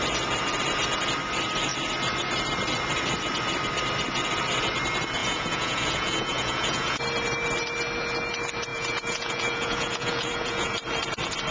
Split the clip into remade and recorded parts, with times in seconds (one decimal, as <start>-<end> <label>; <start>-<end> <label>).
0.0-5.2 recorded; 5.2-7.0 remade; 7.0-8.7 recorded; 8.7-10.7 remade; 10.7-11.5 recorded